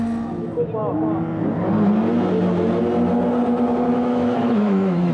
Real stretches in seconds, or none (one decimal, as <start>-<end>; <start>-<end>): 0.0-3.9